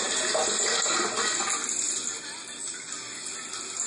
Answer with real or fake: real